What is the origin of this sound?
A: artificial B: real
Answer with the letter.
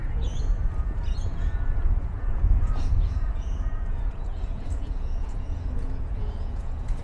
A